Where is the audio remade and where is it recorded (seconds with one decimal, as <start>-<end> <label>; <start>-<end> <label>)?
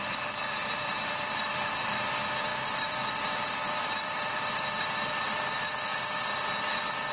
0.0-0.6 recorded; 0.6-2.1 remade; 2.1-2.5 recorded; 2.5-5.5 remade; 5.5-7.1 recorded